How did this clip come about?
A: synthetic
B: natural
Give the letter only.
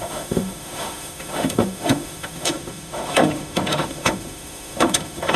A